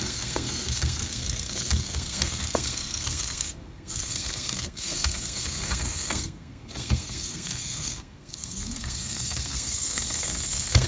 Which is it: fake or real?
fake